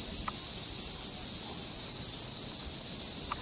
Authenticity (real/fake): real